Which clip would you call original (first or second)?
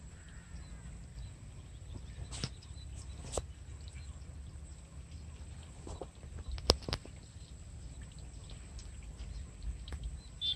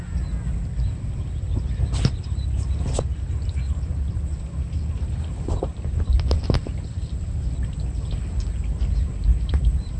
first